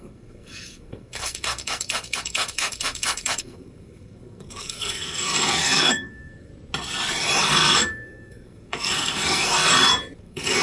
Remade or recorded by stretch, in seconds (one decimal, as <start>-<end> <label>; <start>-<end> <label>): 0.0-6.5 remade; 6.5-7.4 recorded; 7.4-9.7 remade; 9.7-10.2 recorded; 10.2-10.6 remade